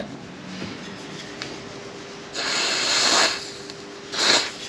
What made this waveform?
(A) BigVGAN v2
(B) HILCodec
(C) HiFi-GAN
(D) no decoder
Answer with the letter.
D